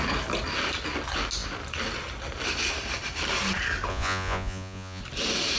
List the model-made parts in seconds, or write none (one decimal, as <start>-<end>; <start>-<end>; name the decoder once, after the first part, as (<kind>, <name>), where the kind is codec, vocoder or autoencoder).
3.9-5.0 (vocoder, Vocos)